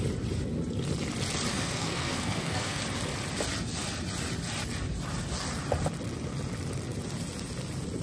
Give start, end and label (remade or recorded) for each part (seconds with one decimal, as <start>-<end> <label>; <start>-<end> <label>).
0.0-1.5 recorded; 1.5-2.8 remade; 2.8-8.0 recorded